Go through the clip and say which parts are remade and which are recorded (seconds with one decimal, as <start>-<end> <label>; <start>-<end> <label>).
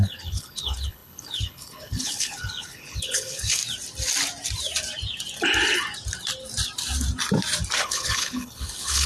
0.0-3.6 remade; 3.6-7.8 recorded; 7.8-9.1 remade